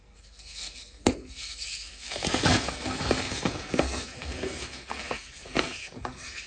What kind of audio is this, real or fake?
fake